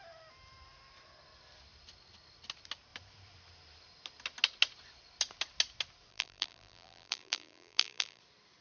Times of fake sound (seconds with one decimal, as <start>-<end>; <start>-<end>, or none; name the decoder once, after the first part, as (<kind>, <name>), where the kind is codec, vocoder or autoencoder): 6.1-8.2 (vocoder, BigVGAN v2)

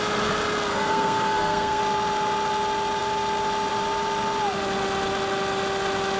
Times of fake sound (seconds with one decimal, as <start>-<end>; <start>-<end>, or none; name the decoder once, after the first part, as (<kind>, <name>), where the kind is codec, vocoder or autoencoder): 0.7-1.8 (codec, SNAC)